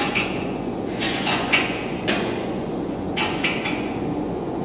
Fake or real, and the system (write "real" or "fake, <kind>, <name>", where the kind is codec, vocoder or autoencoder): fake, vocoder, Vocos